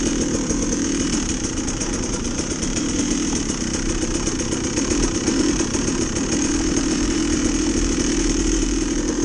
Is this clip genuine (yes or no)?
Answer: no